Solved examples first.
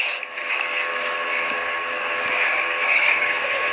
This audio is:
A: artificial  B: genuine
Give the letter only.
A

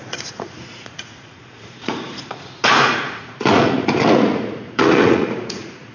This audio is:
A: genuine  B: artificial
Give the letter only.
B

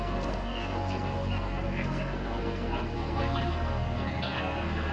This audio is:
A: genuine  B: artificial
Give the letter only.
B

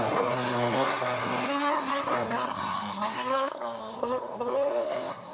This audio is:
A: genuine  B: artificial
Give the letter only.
B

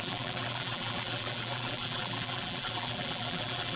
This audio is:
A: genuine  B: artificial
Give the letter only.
B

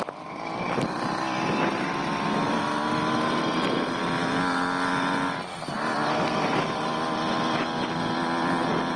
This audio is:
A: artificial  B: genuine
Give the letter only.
B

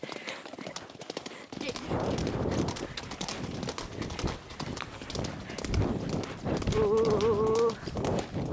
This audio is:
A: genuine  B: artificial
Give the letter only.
A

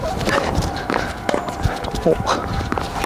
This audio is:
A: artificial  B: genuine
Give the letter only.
A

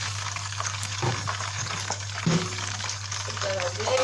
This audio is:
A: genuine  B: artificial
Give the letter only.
B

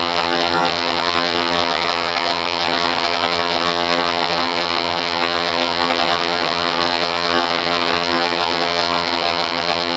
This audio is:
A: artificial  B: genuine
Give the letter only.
A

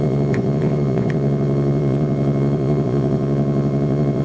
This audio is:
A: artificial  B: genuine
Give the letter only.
A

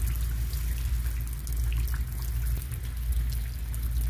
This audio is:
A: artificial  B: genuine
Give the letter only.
B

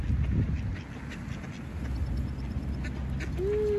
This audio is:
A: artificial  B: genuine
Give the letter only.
B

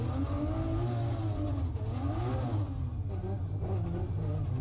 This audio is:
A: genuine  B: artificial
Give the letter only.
A